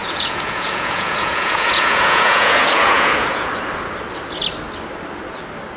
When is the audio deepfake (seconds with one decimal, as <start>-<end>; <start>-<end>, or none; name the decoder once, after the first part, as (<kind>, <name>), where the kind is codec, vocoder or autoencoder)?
0.0-3.5 (vocoder, Vocos)